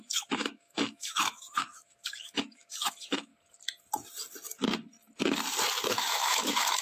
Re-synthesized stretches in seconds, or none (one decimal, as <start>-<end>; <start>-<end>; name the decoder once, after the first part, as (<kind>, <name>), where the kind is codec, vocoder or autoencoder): 0.0-3.3 (autoencoder, DAC-VAE); 5.9-6.8